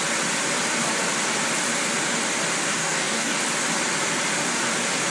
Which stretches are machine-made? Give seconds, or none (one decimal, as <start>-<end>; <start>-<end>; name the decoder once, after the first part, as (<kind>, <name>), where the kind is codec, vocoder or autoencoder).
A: 2.8-3.4 (codec, DAC)